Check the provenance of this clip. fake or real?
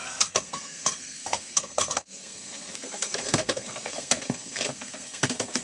fake